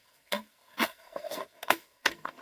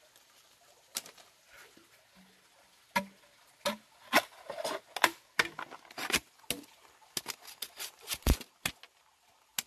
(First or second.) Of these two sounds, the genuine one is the second